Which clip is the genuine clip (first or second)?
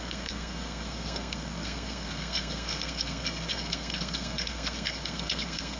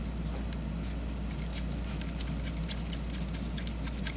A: second